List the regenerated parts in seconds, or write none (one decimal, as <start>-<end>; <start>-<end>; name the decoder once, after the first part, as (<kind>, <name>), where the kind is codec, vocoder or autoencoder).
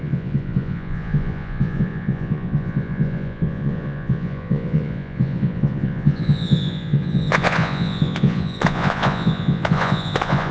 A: 0.0-10.5 (vocoder, Vocos)